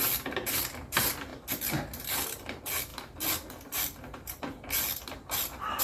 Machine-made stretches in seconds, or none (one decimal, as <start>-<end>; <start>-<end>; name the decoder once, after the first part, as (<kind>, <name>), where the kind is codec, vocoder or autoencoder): none